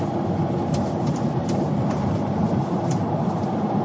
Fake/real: real